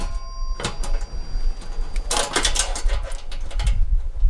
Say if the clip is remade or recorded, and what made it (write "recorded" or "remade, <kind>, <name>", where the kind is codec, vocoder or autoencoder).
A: recorded